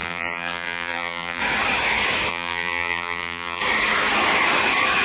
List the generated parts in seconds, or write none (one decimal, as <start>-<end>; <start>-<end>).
0.0-1.4; 2.3-3.6